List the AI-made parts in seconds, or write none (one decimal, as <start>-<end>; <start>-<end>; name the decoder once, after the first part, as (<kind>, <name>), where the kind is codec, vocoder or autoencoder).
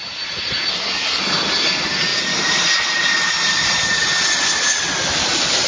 0.7-1.2 (codec, SNAC)